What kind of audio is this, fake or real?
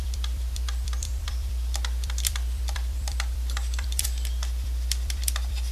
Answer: fake